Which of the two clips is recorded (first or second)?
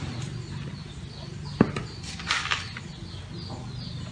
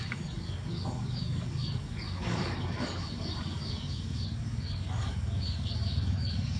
first